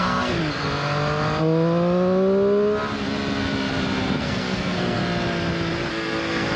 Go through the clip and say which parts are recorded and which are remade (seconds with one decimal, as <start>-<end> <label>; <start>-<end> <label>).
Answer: 0.0-0.4 remade; 0.4-4.1 recorded; 4.1-5.0 remade; 5.0-5.9 recorded; 5.9-6.6 remade